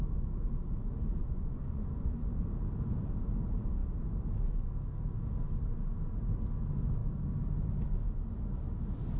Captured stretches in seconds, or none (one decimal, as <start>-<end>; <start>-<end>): 0.0-1.2; 2.4-9.2